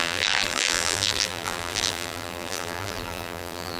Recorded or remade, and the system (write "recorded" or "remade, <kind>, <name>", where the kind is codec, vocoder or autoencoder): remade, vocoder, BigVGAN v2